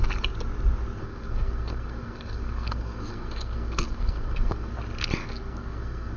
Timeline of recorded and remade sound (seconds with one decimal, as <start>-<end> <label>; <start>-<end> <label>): 0.0-1.0 recorded; 1.0-4.7 remade; 4.7-5.2 recorded; 5.2-6.2 remade